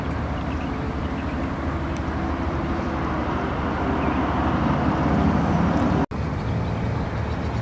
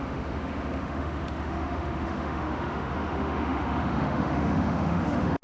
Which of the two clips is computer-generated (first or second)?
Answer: second